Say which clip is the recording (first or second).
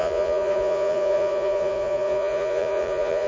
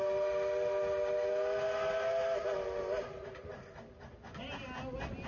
second